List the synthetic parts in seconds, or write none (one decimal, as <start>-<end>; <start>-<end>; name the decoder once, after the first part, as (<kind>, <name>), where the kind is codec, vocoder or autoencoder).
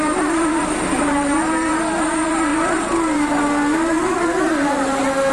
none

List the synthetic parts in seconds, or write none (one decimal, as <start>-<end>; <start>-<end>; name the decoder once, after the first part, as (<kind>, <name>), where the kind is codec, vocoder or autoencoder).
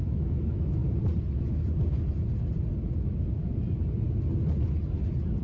0.0-0.8 (autoencoder, DAC-VAE); 3.0-3.4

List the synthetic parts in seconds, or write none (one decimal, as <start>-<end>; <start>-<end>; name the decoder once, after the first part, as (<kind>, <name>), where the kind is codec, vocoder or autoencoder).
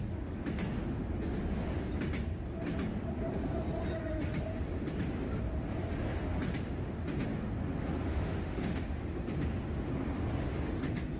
8.0-9.0 (autoencoder, DAC-VAE)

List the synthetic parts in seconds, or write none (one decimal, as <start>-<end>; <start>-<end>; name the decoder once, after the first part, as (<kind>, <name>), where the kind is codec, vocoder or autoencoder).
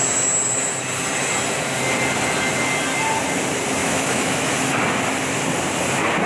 3.8-4.5 (autoencoder, DAC-VAE)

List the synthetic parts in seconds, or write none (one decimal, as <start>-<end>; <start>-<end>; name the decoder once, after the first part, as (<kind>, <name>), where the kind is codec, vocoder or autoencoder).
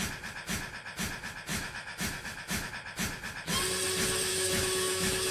1.5-2.7 (autoencoder, DAC-VAE); 4.3-5.3